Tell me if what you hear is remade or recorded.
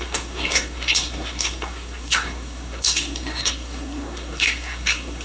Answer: remade